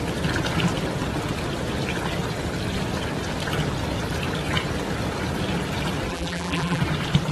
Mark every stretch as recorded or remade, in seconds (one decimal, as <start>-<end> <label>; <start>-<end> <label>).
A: 0.0-6.1 recorded; 6.1-6.8 remade; 6.8-7.3 recorded